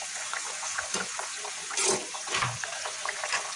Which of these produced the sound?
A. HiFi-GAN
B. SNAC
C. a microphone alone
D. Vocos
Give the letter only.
D